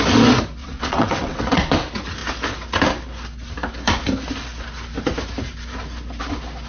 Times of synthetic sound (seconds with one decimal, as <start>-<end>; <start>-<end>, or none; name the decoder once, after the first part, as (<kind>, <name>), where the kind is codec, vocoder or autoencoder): 0.6-1.6 (vocoder, WaveNeXt)